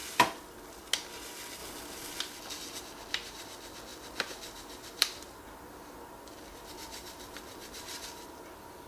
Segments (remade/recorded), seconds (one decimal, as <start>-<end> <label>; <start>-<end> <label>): 0.0-0.7 remade; 0.7-3.9 recorded; 3.9-8.4 remade; 8.4-8.9 recorded